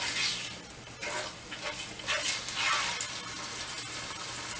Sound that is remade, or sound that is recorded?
recorded